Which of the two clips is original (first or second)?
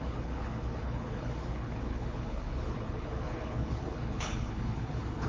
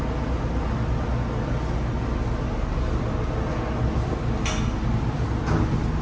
second